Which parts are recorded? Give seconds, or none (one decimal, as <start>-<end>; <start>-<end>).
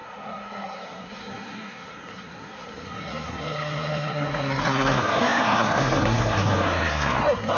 none